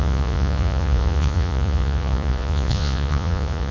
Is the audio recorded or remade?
remade